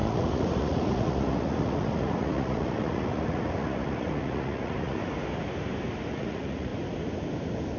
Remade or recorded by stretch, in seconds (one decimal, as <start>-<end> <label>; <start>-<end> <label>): 0.0-5.0 remade; 5.0-6.1 recorded; 6.1-6.7 remade; 6.7-7.8 recorded